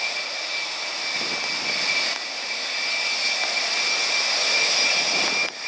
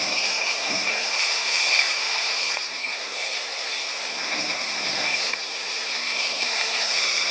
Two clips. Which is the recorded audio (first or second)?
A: first